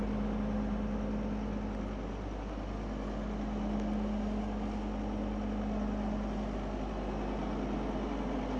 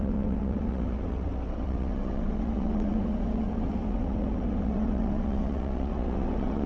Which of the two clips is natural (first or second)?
first